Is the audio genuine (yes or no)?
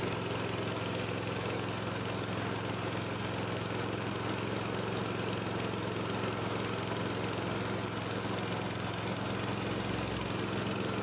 yes